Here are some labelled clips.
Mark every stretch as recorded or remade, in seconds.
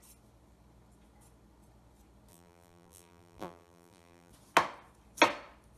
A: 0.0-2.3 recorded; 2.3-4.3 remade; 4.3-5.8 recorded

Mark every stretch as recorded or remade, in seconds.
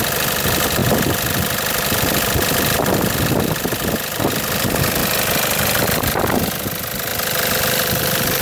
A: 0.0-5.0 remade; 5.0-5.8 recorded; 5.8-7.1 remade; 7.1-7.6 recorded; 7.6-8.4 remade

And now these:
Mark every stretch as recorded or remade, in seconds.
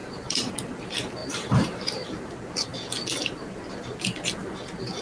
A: 0.0-0.5 remade; 0.5-1.2 recorded; 1.2-2.3 remade; 2.3-5.0 recorded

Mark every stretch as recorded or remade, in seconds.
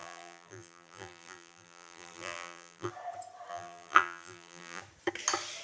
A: 0.0-2.9 remade; 2.9-3.5 recorded; 3.5-4.8 remade; 4.8-5.6 recorded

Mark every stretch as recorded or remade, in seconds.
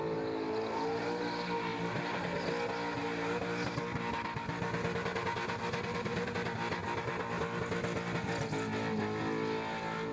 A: 0.0-10.1 recorded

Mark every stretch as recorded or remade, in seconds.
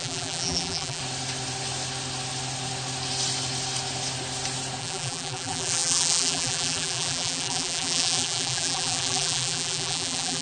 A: 0.0-1.0 remade; 1.0-4.8 recorded; 4.8-10.4 remade